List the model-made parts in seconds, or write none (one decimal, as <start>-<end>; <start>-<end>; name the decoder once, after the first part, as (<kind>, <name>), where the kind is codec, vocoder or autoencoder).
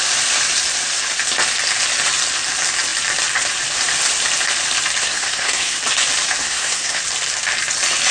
5.0-5.8 (codec, SNAC); 6.4-7.0